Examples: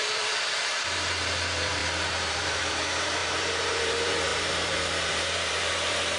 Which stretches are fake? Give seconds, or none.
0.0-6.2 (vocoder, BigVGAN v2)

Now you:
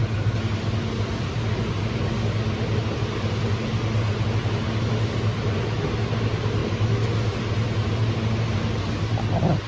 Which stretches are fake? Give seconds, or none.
6.6-7.1 (autoencoder, DAC-VAE)